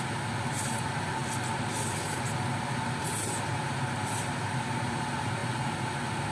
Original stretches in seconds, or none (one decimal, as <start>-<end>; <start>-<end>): 0.0-6.3